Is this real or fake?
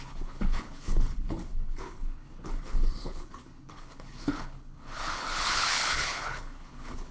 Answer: fake